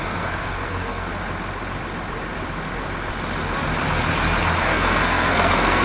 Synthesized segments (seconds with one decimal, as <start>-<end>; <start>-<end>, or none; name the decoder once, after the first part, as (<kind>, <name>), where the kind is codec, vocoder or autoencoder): 0.0-1.1 (codec, SNAC); 4.6-5.8